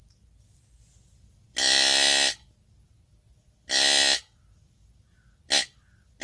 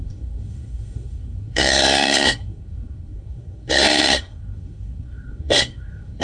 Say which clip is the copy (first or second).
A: second